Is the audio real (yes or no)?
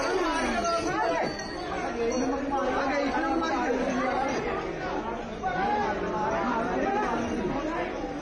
yes